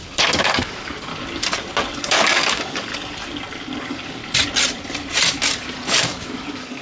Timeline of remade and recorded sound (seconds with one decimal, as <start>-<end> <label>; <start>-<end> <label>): 0.0-1.1 remade; 1.1-2.0 recorded; 2.0-2.9 remade; 2.9-3.8 recorded; 3.8-4.2 remade; 4.2-6.0 recorded; 6.0-6.8 remade